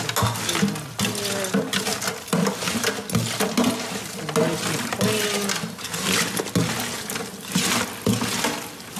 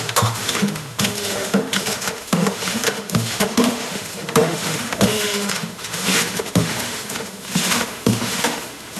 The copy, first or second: second